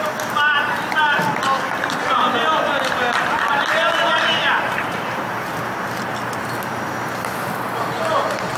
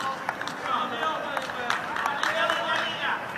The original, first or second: second